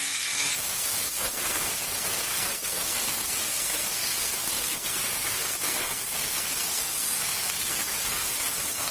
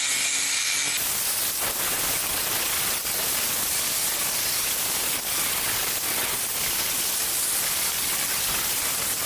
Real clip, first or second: second